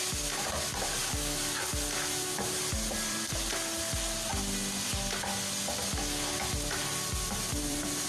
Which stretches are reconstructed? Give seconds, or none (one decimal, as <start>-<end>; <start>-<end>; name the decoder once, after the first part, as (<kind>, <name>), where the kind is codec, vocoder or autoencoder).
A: 0.0-1.0 (vocoder, BigVGAN v2); 2.3-3.5; 6.8-8.1